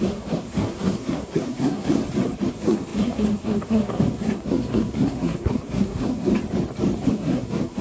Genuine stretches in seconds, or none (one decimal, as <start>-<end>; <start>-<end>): 2.0-2.5; 6.3-7.1